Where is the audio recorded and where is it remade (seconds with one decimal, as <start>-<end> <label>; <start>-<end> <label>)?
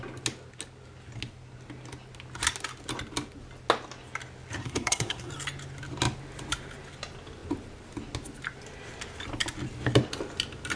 0.0-4.6 recorded; 4.6-5.3 remade; 5.3-10.8 recorded